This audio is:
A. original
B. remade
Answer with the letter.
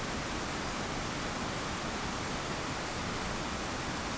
A